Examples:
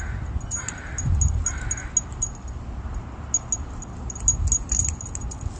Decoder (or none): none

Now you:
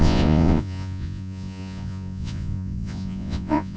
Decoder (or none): vocoder, Vocos